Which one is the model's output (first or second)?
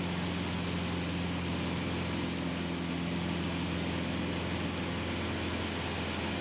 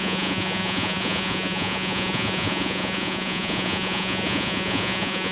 second